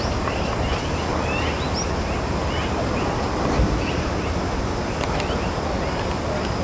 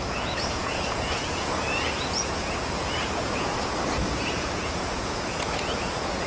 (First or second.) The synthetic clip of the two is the second